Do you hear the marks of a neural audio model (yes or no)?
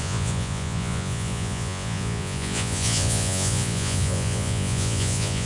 yes